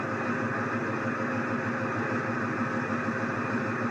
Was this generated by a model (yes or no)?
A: no